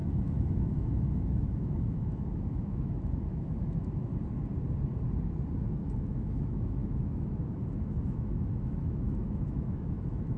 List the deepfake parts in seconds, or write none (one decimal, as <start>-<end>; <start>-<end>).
0.0-4.1; 6.0-10.4